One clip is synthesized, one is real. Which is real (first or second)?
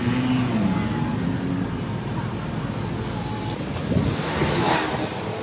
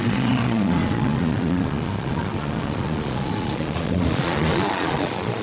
first